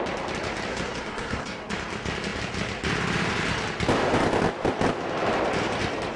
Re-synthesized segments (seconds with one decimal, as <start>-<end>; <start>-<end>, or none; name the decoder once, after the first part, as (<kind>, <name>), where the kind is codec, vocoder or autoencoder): 0.7-1.6 (codec, SNAC)